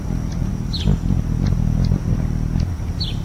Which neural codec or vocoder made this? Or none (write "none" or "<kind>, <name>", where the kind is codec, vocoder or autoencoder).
none